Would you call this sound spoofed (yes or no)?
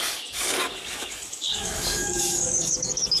yes